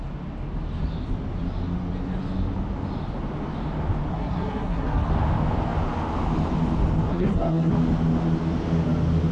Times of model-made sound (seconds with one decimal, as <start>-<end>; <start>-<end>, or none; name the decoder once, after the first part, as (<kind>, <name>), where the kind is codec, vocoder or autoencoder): 4.1-5.1 (codec, SNAC); 7.1-7.7